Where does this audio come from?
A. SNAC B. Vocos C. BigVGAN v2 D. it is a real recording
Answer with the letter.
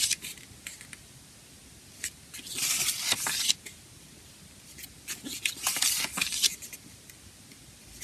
D